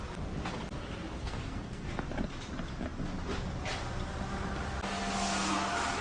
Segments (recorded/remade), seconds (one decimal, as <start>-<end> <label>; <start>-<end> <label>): 0.0-1.2 recorded; 1.2-2.0 remade; 2.0-6.0 recorded